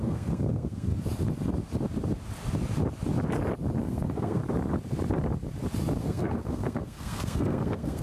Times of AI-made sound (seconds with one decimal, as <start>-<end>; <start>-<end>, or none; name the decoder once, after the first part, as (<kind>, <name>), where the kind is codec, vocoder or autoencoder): 0.0-0.9 (codec, SNAC); 3.8-4.4; 6.0-8.0

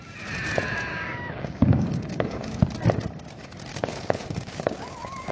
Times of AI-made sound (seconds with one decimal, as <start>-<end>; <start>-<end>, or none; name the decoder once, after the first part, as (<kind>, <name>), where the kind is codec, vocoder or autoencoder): 0.9-2.6 (codec, DAC); 3.7-5.3

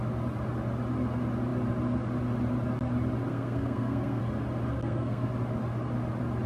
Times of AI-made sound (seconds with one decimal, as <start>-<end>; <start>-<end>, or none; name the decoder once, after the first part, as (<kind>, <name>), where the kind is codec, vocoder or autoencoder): 3.3-4.2 (codec, SNAC); 4.7-5.3

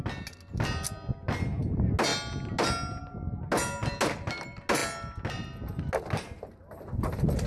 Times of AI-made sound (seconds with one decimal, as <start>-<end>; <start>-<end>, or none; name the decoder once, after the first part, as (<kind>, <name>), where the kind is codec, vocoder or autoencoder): none

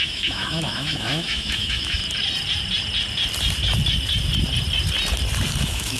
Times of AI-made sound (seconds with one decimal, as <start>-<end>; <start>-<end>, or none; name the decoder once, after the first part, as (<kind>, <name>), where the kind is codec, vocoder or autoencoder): 0.0-2.0 (autoencoder, DAC-VAE); 5.6-6.0